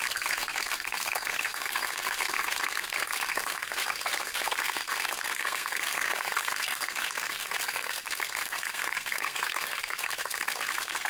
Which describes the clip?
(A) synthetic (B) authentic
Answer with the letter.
A